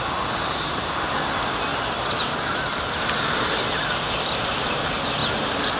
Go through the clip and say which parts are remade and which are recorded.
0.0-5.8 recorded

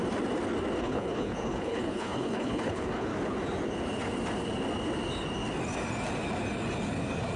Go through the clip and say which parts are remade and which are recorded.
0.0-0.8 recorded; 0.8-3.1 remade; 3.1-7.4 recorded

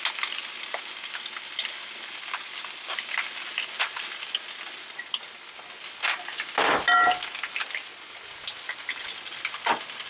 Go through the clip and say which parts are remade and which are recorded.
0.0-10.1 recorded

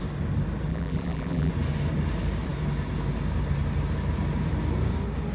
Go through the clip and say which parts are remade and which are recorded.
0.0-0.7 recorded; 0.7-1.5 remade; 1.5-5.3 recorded